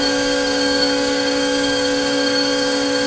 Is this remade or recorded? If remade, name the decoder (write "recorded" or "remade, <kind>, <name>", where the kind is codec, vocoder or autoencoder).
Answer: remade, codec, DAC